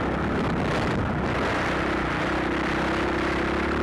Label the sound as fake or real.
real